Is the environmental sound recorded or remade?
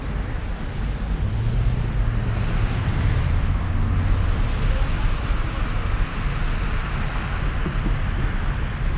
recorded